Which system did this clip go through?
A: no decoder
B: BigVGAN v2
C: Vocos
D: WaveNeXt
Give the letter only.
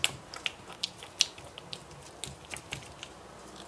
A